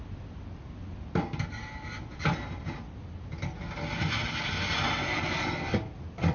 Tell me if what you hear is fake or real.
real